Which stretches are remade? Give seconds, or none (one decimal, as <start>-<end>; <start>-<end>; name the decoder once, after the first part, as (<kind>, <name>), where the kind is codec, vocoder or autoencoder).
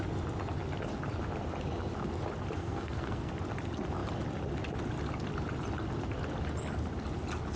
2.6-3.3 (codec, SNAC)